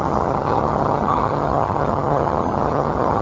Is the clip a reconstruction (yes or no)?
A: yes